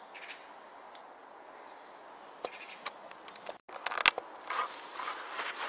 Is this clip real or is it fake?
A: real